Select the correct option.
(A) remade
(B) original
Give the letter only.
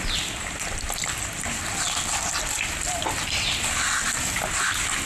B